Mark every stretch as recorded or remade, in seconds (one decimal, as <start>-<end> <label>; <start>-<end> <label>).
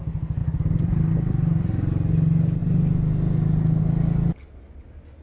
0.0-5.2 recorded